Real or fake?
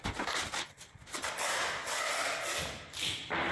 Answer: real